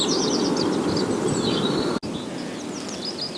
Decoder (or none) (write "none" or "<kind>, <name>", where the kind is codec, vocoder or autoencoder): none